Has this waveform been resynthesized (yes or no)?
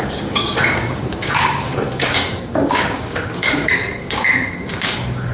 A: yes